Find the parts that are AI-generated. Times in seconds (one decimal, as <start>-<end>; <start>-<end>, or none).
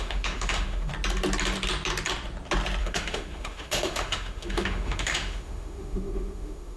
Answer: 0.0-0.9; 2.8-6.8